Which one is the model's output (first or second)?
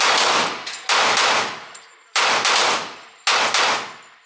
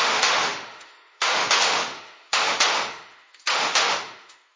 second